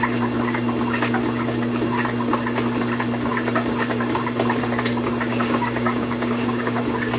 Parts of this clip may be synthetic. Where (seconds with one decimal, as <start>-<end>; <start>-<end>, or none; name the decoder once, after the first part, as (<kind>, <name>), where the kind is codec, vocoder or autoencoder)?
5.3-6.8 (codec, DAC)